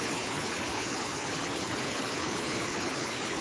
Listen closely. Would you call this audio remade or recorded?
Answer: remade